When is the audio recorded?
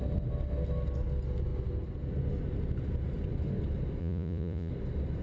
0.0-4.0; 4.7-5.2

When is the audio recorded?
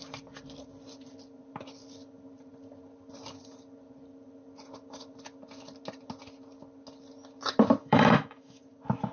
0.0-7.8; 8.6-9.1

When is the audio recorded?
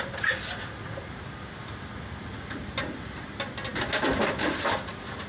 0.0-5.3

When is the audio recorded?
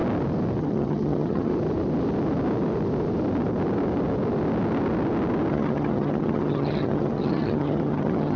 0.0-0.6; 1.5-5.5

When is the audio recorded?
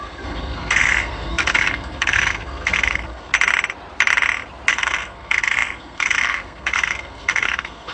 3.3-4.7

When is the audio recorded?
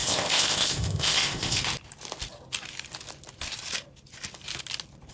1.6-5.1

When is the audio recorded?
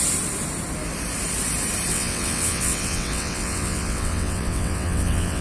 0.0-1.9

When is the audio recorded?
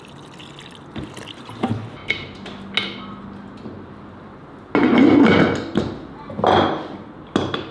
0.0-7.7